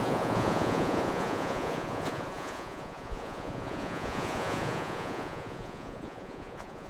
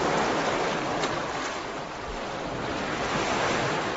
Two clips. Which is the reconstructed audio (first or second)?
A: first